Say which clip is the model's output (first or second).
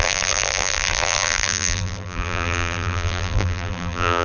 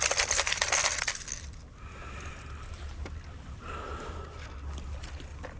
first